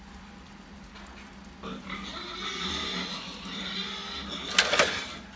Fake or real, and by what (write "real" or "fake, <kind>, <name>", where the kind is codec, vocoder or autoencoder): real